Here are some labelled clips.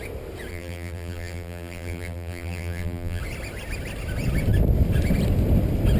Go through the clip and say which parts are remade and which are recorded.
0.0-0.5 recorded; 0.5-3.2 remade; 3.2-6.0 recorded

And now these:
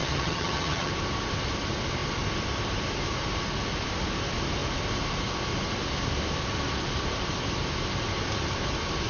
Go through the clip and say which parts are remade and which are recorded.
0.0-0.9 remade; 0.9-9.1 recorded

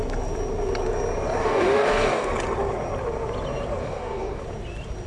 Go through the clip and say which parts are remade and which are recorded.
0.0-1.4 recorded; 1.4-2.3 remade; 2.3-3.8 recorded; 3.8-4.4 remade; 4.4-5.1 recorded

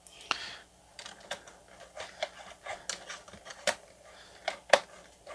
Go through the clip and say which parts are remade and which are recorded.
0.0-3.5 recorded; 3.5-4.4 remade; 4.4-5.3 recorded

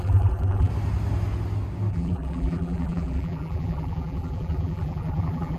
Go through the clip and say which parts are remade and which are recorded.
0.0-0.7 remade; 0.7-1.9 recorded; 1.9-5.6 remade

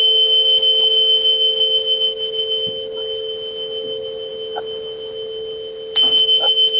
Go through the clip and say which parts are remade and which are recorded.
0.0-6.8 recorded

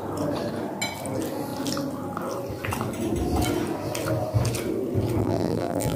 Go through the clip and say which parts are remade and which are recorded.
0.0-5.2 recorded; 5.2-6.0 remade

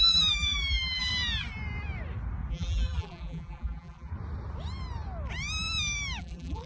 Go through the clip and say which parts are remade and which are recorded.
0.0-1.1 remade; 1.1-2.5 recorded; 2.5-4.1 remade; 4.1-6.2 recorded; 6.2-6.7 remade